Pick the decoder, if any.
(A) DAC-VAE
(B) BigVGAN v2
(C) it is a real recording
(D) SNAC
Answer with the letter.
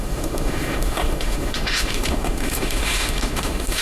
A